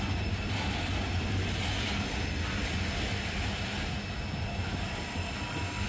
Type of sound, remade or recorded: recorded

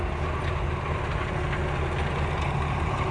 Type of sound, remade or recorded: recorded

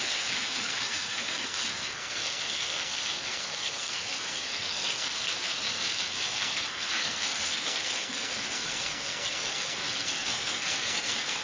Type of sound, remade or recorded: remade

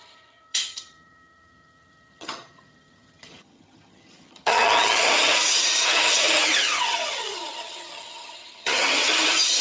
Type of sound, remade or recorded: remade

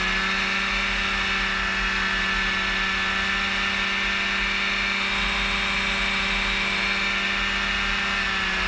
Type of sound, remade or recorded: recorded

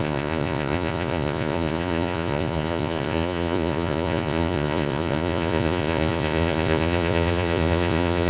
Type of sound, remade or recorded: remade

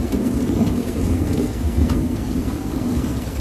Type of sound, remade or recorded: remade